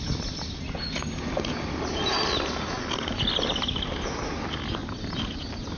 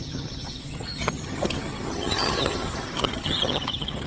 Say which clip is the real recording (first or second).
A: first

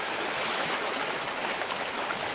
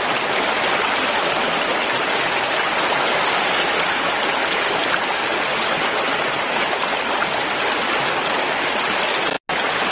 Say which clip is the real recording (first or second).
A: second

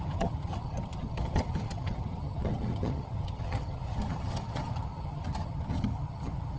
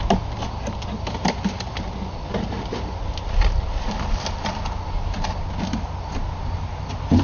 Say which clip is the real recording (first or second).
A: second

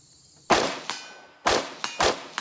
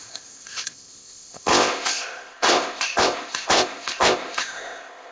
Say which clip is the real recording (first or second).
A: first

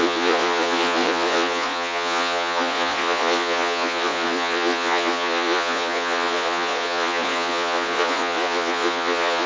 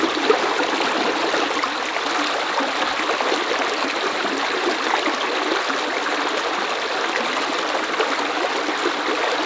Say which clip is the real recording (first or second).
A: second